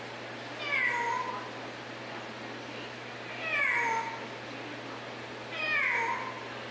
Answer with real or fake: real